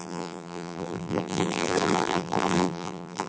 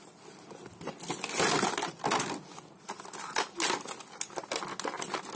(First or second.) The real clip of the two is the second